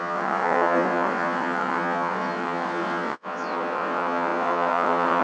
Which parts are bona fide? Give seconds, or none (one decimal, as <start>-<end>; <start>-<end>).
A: none